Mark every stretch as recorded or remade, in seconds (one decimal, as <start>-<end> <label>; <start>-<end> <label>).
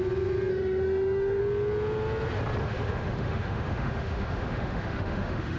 0.0-0.5 recorded; 0.5-1.4 remade; 1.4-2.6 recorded; 2.6-5.6 remade